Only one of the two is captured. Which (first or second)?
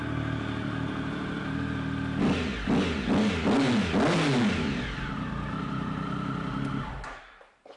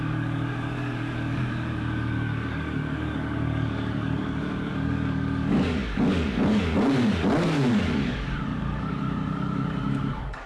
first